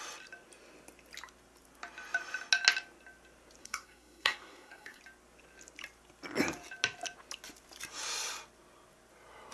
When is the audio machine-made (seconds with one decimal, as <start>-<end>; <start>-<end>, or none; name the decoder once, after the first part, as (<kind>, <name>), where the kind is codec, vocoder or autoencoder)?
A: 3.6-5.0 (codec, SNAC)